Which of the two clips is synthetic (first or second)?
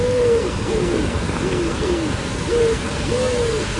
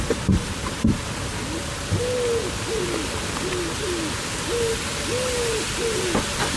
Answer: first